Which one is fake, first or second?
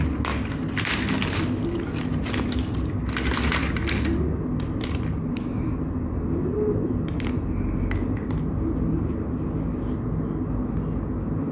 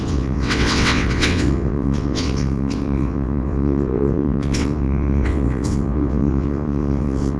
second